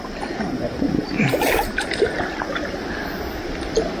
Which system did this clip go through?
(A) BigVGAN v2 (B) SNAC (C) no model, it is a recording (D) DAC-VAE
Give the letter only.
A